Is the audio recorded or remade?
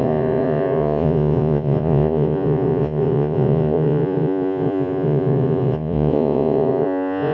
remade